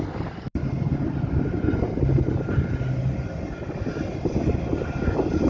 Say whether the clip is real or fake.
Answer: real